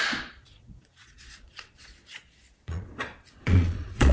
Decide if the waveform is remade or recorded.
remade